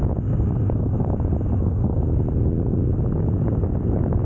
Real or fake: real